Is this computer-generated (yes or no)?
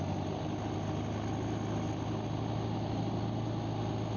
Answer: no